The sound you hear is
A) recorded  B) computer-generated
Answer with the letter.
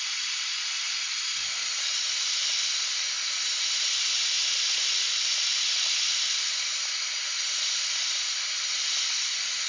B